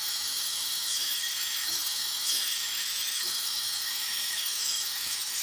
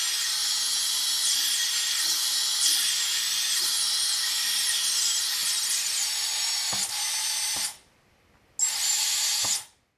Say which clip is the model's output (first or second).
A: first